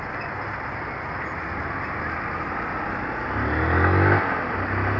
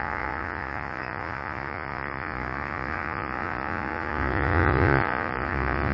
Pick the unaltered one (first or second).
first